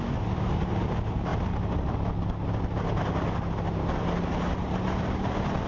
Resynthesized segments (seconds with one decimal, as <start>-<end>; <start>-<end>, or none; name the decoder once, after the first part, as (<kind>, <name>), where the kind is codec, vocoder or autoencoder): none